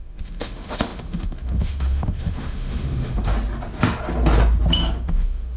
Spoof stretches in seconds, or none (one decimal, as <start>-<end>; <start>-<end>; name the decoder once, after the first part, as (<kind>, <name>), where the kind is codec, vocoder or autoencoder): 0.0-3.3 (autoencoder, DAC-VAE); 4.7-5.6